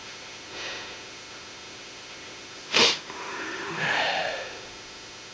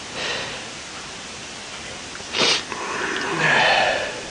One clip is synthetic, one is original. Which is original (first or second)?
second